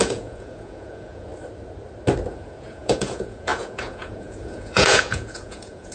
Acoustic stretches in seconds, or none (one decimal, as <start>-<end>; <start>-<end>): 1.3-2.3